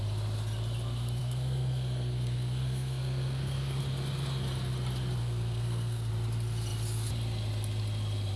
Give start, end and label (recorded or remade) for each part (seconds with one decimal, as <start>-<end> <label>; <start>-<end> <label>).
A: 0.0-1.2 recorded; 1.2-3.8 remade; 3.8-5.2 recorded; 5.2-6.1 remade; 6.1-8.4 recorded